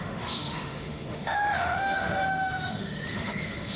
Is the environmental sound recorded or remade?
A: remade